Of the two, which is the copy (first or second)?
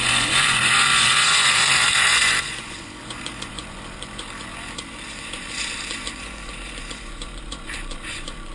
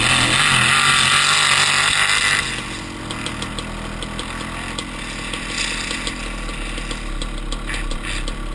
first